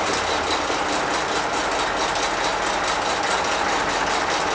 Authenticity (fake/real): real